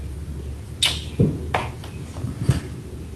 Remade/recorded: recorded